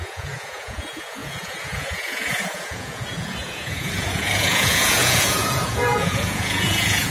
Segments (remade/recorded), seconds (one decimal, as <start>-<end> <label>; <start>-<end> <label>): 0.0-7.1 remade